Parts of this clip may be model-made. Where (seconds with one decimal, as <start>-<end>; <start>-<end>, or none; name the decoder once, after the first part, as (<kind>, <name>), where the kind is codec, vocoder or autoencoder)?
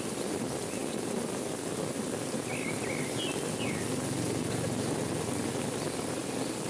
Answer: none